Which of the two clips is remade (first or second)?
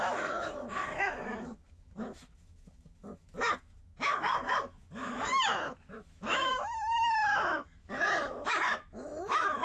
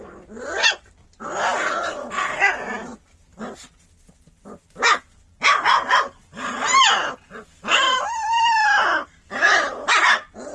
first